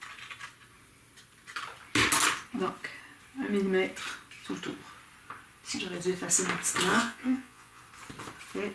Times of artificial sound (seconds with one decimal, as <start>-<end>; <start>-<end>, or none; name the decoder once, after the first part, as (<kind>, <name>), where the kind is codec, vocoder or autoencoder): 6.9-7.8 (vocoder, Vocos)

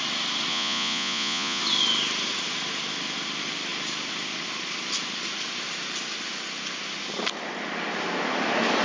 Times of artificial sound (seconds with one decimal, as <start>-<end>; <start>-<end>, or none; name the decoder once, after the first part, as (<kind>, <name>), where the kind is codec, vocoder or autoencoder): 0.5-1.6 (vocoder, Vocos)

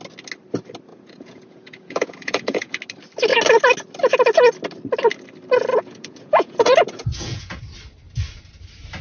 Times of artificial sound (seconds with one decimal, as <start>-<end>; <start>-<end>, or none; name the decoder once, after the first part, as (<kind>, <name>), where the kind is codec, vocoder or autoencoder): 0.9-2.8 (vocoder, Vocos); 5.7-7.6

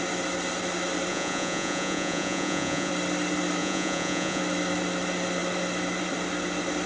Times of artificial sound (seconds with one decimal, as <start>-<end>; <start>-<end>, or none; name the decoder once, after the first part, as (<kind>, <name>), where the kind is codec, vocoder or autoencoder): 1.1-2.9 (vocoder, Vocos); 3.6-4.4

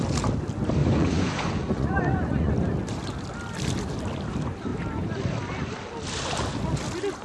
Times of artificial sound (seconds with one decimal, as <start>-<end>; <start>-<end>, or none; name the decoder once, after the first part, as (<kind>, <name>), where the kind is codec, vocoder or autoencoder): 0.8-2.5 (vocoder, Vocos)

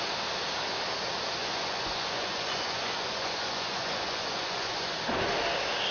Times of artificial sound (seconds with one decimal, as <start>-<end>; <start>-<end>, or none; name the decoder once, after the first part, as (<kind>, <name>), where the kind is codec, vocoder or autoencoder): 1.4-4.9 (vocoder, Vocos)

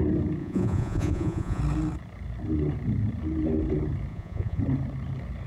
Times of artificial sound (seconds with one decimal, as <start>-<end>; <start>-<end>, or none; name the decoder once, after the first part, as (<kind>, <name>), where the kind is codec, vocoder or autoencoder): 0.4-1.6 (vocoder, Vocos); 4.1-4.6